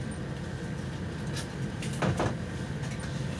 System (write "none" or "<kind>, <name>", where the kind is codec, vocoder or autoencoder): none